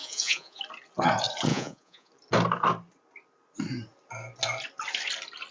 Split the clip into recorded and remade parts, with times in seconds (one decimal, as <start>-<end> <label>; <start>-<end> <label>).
0.0-0.6 remade; 0.6-1.5 recorded; 1.5-2.1 remade; 2.1-5.5 recorded